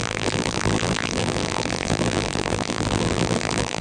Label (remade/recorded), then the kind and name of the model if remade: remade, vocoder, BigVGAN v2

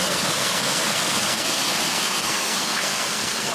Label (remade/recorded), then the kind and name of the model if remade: remade, codec, SNAC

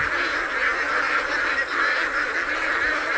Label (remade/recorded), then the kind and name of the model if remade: recorded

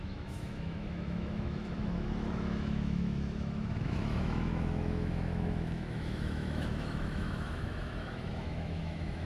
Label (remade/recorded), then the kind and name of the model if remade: remade, autoencoder, DAC-VAE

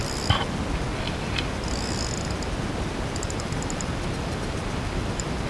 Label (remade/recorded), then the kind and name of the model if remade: recorded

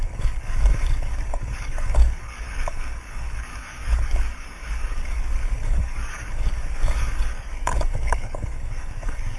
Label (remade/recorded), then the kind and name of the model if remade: remade, codec, DAC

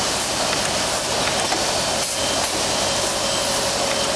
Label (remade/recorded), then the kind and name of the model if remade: recorded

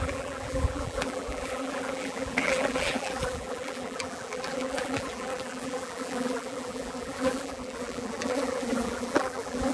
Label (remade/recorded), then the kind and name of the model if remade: remade, vocoder, BigVGAN v2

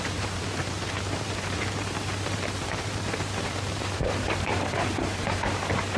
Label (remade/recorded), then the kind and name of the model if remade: remade, vocoder, BigVGAN v2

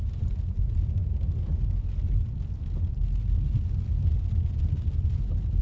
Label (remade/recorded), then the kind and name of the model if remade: recorded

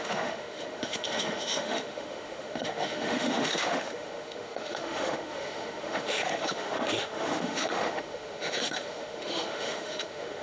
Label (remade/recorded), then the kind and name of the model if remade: remade, autoencoder, DAC-VAE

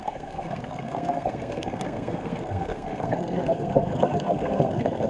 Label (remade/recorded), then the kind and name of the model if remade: remade, codec, SNAC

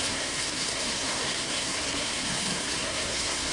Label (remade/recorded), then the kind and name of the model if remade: remade, codec, SNAC